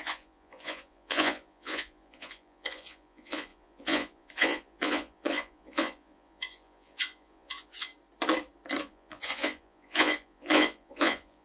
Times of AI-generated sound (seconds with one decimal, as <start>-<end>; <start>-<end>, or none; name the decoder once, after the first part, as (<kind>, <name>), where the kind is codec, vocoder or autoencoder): 0.0-7.9 (vocoder, Vocos); 8.8-11.4